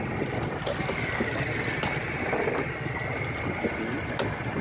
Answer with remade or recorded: recorded